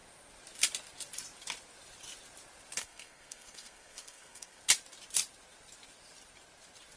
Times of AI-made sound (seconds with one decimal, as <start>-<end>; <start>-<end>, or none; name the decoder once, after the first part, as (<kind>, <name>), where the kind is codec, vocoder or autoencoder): 2.8-4.6 (codec, SNAC)